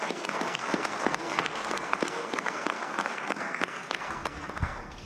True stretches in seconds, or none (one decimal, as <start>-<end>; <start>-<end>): none